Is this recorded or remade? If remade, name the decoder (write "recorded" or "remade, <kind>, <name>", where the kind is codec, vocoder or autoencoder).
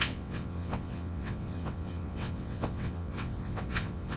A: remade, vocoder, WaveNeXt